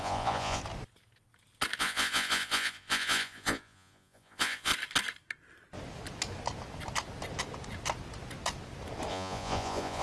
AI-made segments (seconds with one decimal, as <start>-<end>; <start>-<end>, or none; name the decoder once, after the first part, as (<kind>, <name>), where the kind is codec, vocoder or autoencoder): 0.0-0.6 (vocoder, Vocos); 1.8-4.7; 9.1-10.0